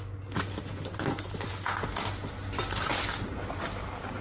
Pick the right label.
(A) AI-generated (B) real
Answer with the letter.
B